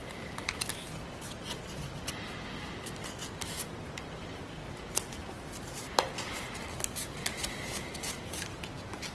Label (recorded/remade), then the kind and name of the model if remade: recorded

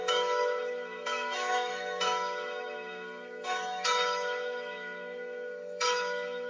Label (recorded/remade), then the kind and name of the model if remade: remade, autoencoder, DAC-VAE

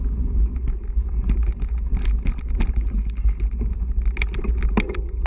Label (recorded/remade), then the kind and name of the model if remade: recorded